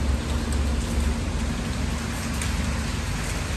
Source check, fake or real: real